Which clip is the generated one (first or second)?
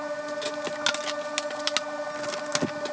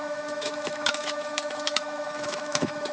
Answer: second